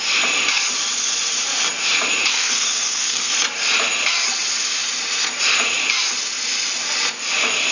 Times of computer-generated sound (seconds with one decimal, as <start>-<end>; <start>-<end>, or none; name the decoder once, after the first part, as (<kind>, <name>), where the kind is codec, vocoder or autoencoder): 2.3-3.3 (codec, SNAC)